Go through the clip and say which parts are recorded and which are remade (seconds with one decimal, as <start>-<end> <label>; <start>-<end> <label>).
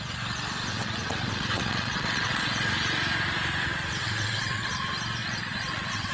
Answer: 0.0-0.7 recorded; 0.7-2.7 remade; 2.7-4.0 recorded; 4.0-4.7 remade; 4.7-5.2 recorded; 5.2-6.1 remade